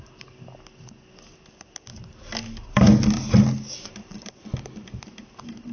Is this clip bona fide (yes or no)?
yes